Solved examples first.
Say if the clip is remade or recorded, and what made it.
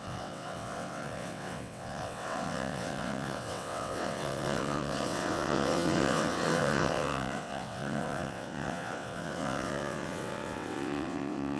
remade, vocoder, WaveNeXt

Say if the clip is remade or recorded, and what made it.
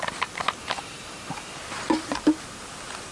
remade, vocoder, BigVGAN v2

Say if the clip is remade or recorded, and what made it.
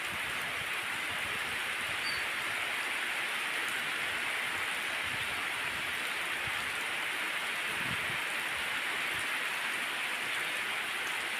recorded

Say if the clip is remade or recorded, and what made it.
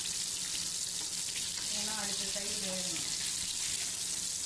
recorded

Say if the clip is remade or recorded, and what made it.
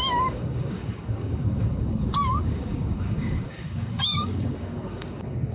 remade, codec, DAC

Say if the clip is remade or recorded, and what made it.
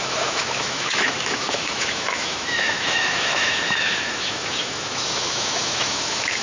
remade, autoencoder, DAC-VAE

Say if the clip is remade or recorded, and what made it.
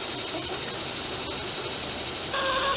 recorded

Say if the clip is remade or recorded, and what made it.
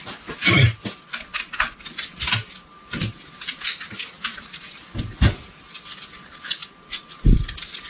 recorded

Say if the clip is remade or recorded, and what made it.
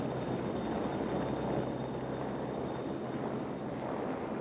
recorded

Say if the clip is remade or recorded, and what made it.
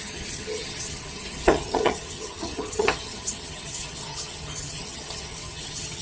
remade, vocoder, HiFi-GAN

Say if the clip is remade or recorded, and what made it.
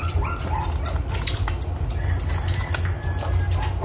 recorded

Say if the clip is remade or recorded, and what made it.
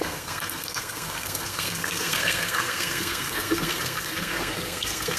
remade, codec, SNAC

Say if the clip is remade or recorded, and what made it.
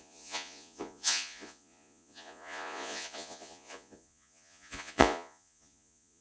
remade, vocoder, Vocos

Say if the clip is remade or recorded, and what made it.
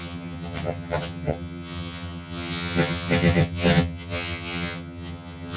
remade, vocoder, HiFi-GAN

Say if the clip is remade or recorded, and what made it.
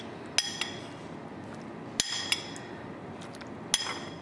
recorded